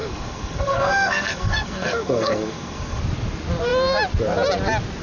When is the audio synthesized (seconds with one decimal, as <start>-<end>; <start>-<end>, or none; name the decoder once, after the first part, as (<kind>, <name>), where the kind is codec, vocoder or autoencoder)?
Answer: 0.0-3.0 (codec, SNAC)

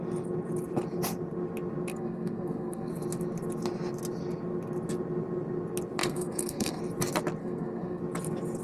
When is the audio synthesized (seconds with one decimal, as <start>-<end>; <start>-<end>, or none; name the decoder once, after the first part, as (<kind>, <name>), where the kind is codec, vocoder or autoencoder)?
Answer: 1.9-2.9 (codec, SNAC); 6.0-6.8; 7.4-8.0

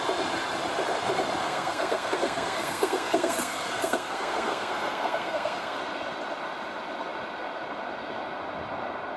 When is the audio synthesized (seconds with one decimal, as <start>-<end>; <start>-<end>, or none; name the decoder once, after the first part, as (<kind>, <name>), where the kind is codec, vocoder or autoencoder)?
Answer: 1.4-5.8 (codec, SNAC)

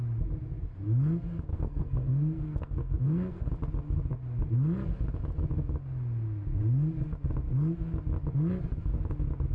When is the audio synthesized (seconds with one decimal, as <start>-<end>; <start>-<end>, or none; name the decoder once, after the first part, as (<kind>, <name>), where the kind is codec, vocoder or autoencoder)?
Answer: 1.5-3.5 (codec, SNAC)

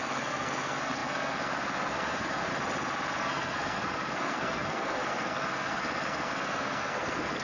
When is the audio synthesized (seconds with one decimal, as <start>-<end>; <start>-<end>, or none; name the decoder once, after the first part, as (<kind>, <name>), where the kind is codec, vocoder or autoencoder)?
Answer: 0.0-2.5 (codec, SNAC); 3.2-7.4

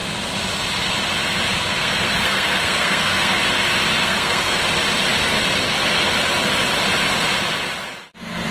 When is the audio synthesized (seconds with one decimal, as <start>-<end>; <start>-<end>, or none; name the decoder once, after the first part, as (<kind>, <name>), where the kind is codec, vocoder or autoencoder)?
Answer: 1.8-3.4 (codec, SNAC); 4.0-4.6

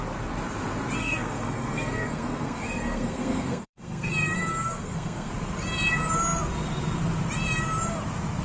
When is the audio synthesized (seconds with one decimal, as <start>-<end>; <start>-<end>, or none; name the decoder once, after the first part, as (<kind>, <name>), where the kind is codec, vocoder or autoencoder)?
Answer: 1.0-4.1 (codec, SNAC); 4.5-5.3

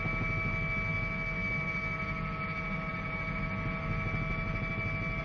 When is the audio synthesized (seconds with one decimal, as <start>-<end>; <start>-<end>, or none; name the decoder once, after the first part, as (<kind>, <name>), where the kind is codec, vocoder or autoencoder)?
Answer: none